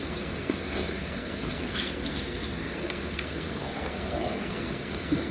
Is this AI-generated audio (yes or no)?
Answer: yes